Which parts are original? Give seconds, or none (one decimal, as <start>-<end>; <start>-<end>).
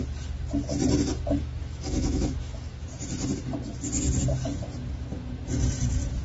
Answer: 0.0-1.4; 2.7-6.2